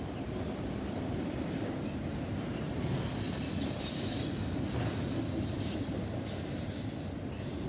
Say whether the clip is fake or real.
real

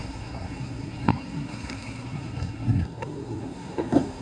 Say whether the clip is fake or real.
fake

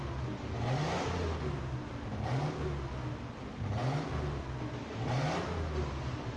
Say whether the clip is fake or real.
real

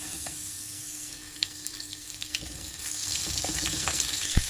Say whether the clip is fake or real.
fake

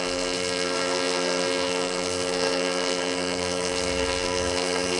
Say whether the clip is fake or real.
fake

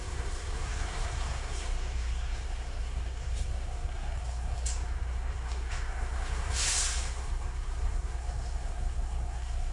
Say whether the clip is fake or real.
fake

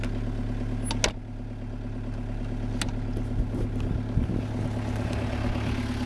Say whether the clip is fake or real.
real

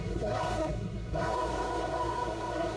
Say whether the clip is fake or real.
fake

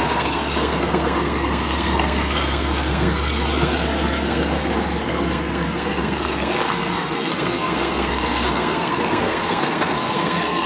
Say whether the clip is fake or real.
fake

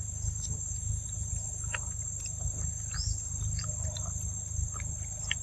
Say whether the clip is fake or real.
real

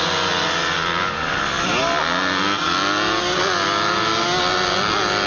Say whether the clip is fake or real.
real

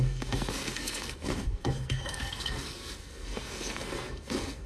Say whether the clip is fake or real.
fake